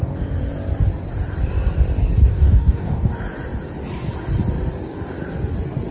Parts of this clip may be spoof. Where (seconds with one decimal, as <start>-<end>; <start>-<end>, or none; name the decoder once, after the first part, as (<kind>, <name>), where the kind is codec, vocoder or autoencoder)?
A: 2.3-3.1 (codec, DAC)